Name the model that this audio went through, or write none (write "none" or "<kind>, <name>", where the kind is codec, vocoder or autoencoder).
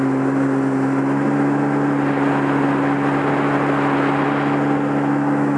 none